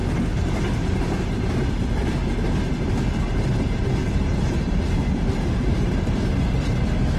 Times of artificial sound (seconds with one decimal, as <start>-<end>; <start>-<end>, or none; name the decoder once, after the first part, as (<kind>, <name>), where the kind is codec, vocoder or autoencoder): 3.8-5.9 (vocoder, BigVGAN v2)